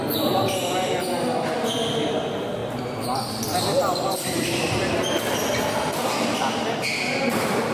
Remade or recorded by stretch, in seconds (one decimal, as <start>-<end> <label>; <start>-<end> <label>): 0.0-7.7 recorded